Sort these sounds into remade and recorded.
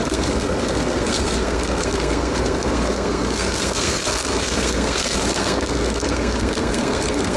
remade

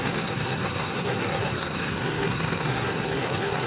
remade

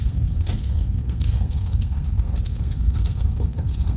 remade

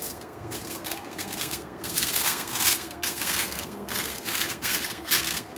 remade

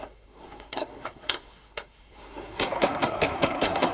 remade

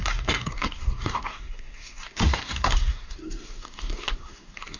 remade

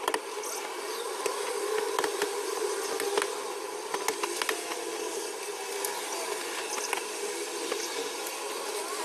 recorded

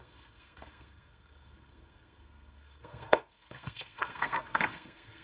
remade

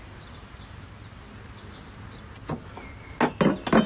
recorded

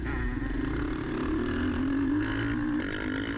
recorded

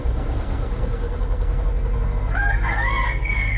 remade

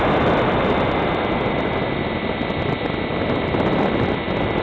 recorded